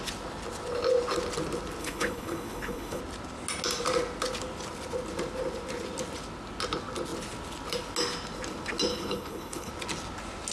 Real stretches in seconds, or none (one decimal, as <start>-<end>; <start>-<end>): 0.0-1.8; 3.0-8.9; 9.7-10.5